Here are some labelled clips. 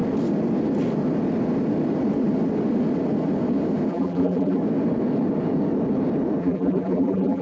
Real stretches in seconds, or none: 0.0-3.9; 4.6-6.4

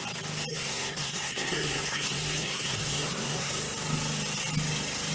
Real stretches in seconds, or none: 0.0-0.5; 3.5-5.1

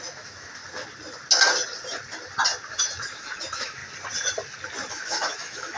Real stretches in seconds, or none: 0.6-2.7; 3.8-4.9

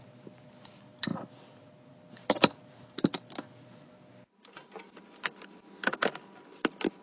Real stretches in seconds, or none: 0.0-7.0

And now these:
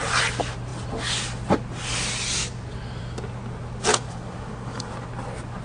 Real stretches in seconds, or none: 0.0-3.9; 4.9-5.6

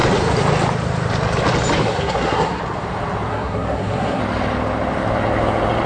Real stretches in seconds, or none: 0.0-1.8; 2.6-3.3; 4.2-5.9

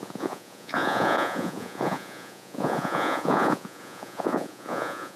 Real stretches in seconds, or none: none

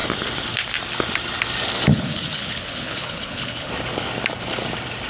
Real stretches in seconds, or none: 0.0-1.9; 3.7-5.1